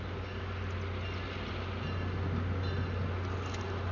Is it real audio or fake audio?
real